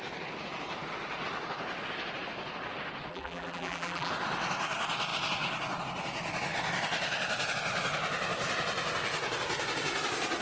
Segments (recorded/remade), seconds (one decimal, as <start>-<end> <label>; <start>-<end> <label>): 0.0-3.1 recorded; 3.1-4.1 remade; 4.1-10.4 recorded